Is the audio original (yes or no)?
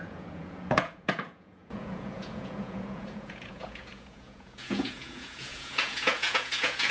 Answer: no